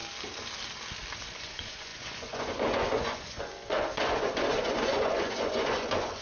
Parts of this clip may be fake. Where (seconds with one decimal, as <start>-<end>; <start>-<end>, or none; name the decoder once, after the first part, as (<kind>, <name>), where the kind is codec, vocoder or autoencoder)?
1.2-6.2 (vocoder, Vocos)